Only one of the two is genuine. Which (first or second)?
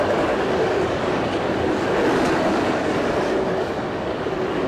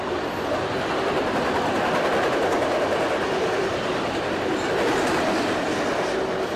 second